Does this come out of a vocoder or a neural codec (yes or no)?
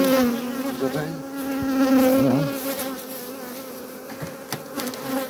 no